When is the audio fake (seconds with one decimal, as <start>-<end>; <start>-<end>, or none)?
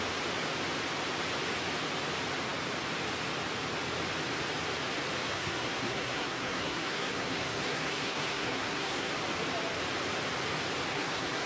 5.3-9.1; 10.9-11.5